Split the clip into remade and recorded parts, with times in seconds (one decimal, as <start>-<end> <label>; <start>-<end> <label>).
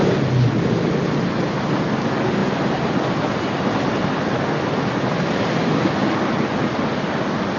0.0-7.6 recorded